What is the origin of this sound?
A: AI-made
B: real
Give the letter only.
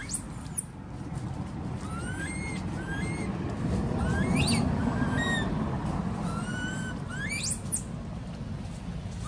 B